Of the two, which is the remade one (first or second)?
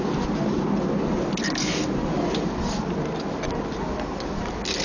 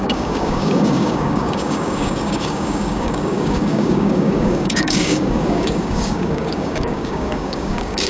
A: second